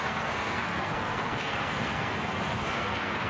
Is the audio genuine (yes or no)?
no